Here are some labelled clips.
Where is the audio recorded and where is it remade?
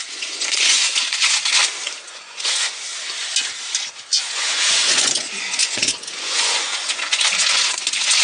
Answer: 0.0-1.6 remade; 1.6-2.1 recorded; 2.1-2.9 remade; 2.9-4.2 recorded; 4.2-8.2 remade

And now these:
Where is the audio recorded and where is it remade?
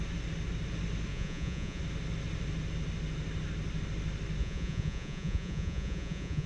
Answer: 0.0-1.1 recorded; 1.1-1.8 remade; 1.8-4.4 recorded; 4.4-6.5 remade